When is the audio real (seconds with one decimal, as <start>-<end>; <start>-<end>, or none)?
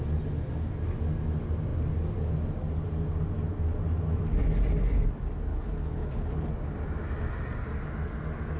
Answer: 0.0-5.5; 6.5-8.6